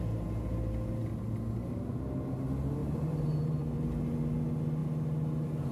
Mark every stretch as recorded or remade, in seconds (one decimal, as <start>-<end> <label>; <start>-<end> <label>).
0.0-2.8 recorded; 2.8-3.6 remade; 3.6-5.7 recorded